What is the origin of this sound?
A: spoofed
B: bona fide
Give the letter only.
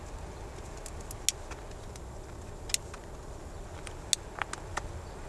B